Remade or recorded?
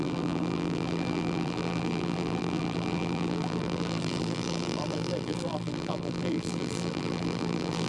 remade